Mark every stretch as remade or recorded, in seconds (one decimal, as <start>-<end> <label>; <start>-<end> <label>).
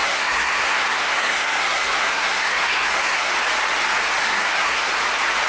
0.0-3.3 remade; 3.3-4.2 recorded; 4.2-4.9 remade; 4.9-5.5 recorded